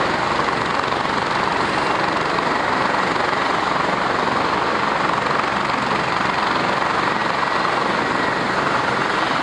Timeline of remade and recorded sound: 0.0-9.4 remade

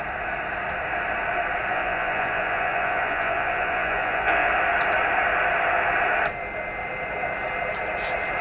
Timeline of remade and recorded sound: 0.0-1.7 recorded; 1.7-4.5 remade; 4.5-8.4 recorded

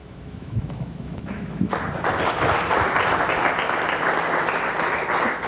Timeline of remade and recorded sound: 0.0-1.7 remade; 1.7-5.5 recorded